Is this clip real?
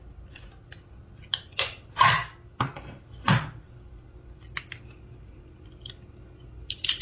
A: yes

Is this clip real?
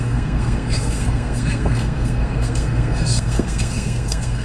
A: no